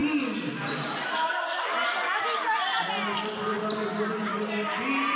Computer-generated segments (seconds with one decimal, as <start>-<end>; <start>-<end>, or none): none